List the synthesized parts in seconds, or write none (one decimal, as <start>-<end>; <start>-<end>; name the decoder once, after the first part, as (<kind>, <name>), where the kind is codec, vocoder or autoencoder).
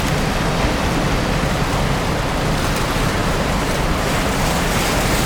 3.2-5.3 (vocoder, BigVGAN v2)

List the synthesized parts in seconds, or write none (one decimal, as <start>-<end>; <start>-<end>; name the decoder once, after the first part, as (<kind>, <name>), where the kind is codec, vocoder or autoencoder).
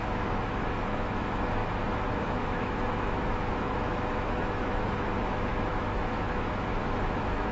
0.0-7.5 (autoencoder, DAC-VAE)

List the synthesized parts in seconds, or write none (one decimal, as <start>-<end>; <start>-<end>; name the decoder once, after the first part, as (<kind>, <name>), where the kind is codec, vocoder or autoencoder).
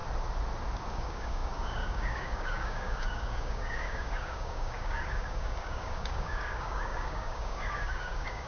0.9-8.5 (codec, DAC)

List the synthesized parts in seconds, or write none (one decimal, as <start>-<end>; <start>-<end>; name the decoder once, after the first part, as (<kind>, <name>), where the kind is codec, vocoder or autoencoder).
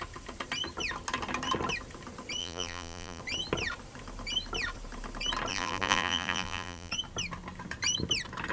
2.4-3.2 (vocoder, BigVGAN v2); 5.5-6.9